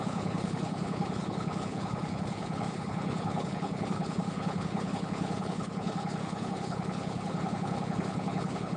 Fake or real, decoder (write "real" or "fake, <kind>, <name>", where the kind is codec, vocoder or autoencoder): fake, codec, HILCodec